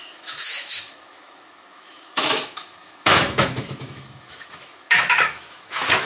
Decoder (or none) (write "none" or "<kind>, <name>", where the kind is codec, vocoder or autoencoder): autoencoder, DAC-VAE